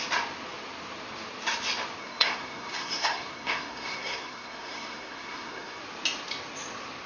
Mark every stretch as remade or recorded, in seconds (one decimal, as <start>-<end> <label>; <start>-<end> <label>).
0.0-2.0 recorded; 2.0-5.8 remade; 5.8-7.1 recorded